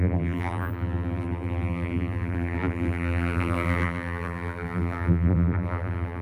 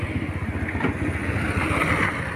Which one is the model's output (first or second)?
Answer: first